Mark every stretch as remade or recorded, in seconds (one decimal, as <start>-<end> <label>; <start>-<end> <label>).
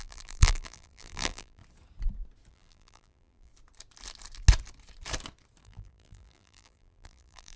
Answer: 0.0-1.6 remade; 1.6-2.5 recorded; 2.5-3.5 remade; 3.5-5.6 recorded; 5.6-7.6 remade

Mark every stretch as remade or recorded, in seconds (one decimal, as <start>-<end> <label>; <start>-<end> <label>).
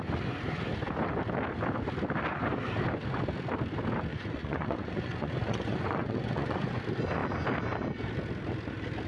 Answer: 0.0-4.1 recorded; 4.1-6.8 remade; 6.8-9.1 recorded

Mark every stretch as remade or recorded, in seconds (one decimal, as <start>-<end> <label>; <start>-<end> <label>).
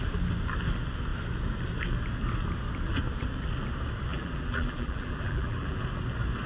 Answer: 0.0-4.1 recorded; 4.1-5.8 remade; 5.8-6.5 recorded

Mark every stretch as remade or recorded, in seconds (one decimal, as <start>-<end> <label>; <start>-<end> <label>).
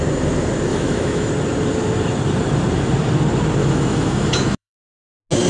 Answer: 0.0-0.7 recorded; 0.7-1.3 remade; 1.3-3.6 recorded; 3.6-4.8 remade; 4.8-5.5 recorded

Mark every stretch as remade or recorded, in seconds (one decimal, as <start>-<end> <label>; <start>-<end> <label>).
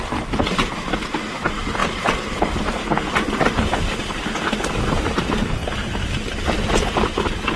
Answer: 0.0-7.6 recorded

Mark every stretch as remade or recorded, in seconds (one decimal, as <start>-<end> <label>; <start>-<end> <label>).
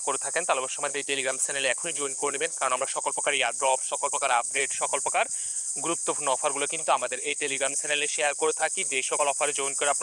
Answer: 0.0-0.9 recorded; 0.9-4.6 remade; 4.6-6.8 recorded; 6.8-9.2 remade; 9.2-10.0 recorded